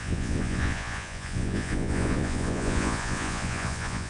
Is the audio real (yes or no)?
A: no